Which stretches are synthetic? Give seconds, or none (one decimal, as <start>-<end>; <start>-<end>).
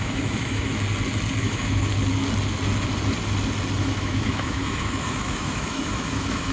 0.0-0.7; 1.4-1.9; 3.8-6.5